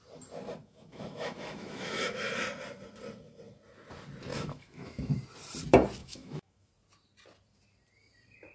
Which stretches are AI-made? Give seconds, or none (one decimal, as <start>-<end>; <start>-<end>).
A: 0.6-2.4; 4.3-5.2; 6.0-6.7